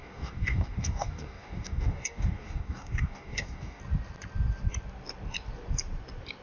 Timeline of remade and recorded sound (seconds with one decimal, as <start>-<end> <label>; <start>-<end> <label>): 0.0-3.8 remade; 3.8-6.4 recorded